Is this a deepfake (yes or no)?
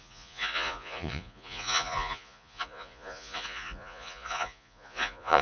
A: yes